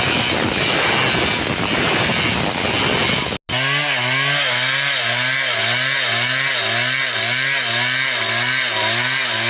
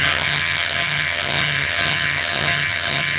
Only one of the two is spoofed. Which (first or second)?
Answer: second